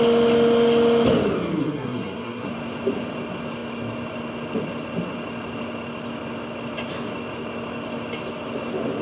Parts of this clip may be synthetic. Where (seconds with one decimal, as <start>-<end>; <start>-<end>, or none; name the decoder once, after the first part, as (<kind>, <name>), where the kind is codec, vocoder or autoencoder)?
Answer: 1.6-2.5 (codec, SNAC)